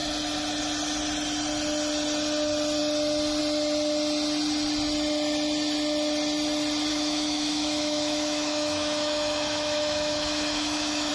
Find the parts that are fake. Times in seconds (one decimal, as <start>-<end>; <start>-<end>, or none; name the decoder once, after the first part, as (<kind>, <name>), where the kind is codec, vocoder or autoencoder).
6.9-11.1 (autoencoder, DAC-VAE)